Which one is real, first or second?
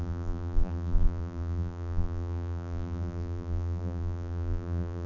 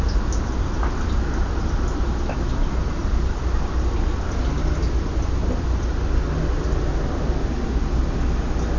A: second